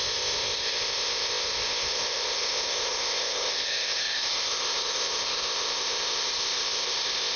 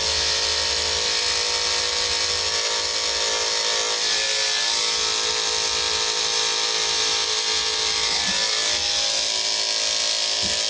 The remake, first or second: first